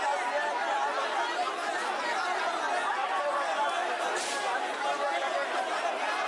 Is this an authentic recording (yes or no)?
yes